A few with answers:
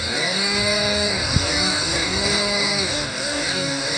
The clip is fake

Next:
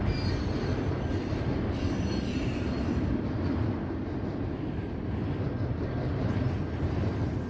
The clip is real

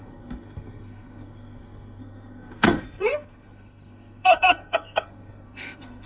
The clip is fake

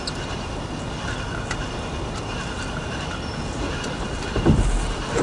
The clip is real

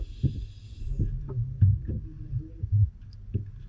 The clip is real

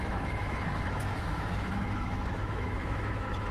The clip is fake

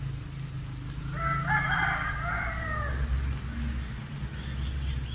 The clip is real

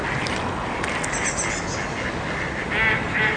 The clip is real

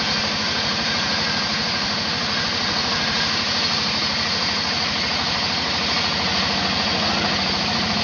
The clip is fake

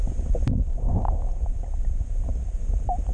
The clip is real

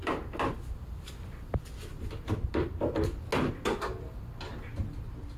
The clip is real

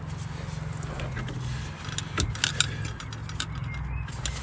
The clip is real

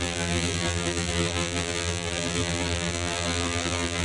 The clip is fake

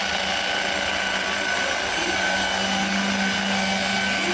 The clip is real